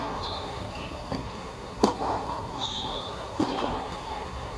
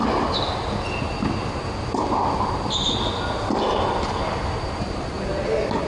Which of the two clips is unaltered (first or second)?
second